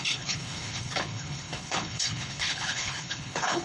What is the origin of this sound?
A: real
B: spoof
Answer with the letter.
B